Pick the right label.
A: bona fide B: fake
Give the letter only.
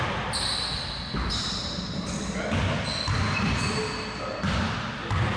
A